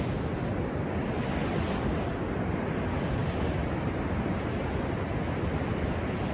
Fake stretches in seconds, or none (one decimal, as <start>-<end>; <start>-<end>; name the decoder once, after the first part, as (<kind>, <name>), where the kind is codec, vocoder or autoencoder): none